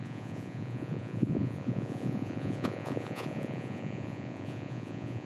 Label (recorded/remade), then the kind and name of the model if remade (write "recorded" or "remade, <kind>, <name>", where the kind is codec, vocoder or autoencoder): remade, vocoder, Vocos